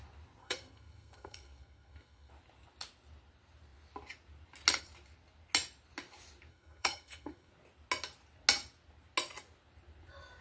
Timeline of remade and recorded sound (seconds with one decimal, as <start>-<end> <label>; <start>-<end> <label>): 0.0-0.4 recorded; 0.4-2.3 remade; 2.3-6.5 recorded; 6.5-7.5 remade; 7.5-10.4 recorded